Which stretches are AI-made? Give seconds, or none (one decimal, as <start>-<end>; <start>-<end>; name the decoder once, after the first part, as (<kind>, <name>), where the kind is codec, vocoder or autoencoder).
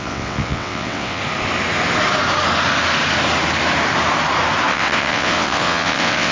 0.0-1.2 (vocoder, WaveNeXt); 4.7-6.3